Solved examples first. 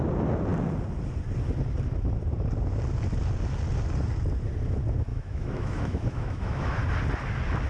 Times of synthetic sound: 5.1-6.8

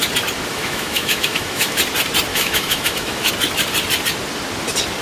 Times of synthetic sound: 0.5-1.8; 2.3-3.3

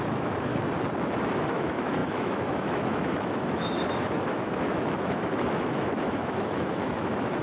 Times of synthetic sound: 0.0-0.5; 1.1-7.4

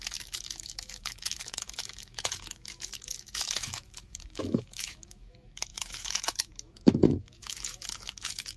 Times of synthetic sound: 0.0-8.6

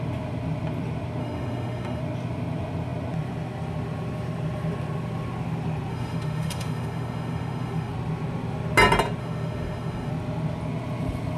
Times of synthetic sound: 1.2-2.0; 5.9-7.9; 9.2-10.1

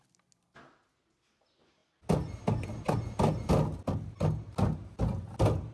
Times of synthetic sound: none

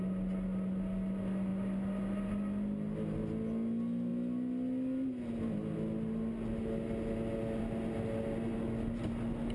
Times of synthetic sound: none

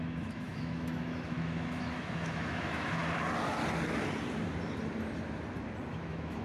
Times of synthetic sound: 0.0-3.0; 5.9-6.4